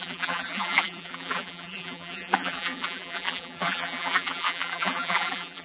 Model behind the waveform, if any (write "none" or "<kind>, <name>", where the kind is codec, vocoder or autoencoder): vocoder, BigVGAN v2